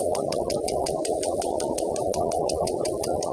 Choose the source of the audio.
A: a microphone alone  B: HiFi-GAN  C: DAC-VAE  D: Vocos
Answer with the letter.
D